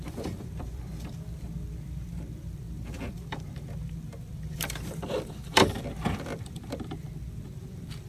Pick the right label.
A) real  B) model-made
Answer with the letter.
B